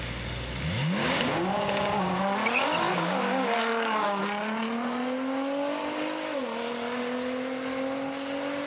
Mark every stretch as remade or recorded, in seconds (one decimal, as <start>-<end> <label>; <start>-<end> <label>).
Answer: 0.0-1.0 recorded; 1.0-2.2 remade; 2.2-2.9 recorded; 2.9-4.2 remade; 4.2-8.7 recorded